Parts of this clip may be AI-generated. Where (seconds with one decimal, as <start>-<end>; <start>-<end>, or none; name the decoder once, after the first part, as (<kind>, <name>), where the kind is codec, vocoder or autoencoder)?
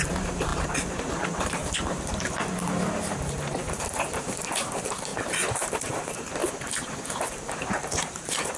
0.0-6.4 (vocoder, BigVGAN v2); 7.2-8.6